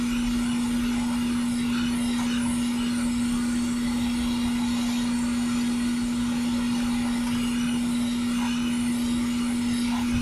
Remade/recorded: recorded